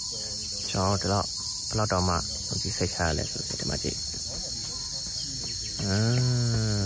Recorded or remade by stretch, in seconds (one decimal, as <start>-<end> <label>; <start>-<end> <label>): 0.0-6.9 recorded

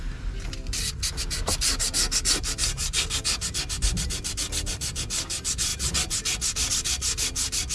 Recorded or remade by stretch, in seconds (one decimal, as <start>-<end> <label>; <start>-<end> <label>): 0.0-7.7 recorded

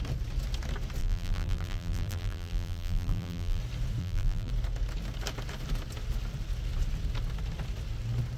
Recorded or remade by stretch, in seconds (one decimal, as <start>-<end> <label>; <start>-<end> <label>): 0.0-1.0 recorded; 1.0-3.6 remade; 3.6-4.0 recorded; 4.0-4.5 remade; 4.5-8.4 recorded

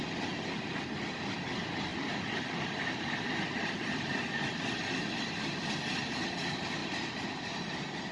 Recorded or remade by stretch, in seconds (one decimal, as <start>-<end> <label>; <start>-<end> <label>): 0.0-1.9 recorded; 1.9-5.2 remade; 5.2-6.8 recorded; 6.8-8.1 remade

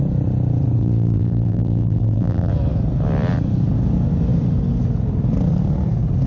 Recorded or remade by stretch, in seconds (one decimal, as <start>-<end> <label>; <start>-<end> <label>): 0.0-0.8 recorded; 0.8-2.5 remade; 2.5-6.3 recorded

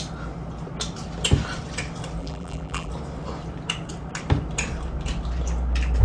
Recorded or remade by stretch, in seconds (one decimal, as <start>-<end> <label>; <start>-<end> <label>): 0.0-2.2 recorded; 2.2-2.9 remade; 2.9-6.0 recorded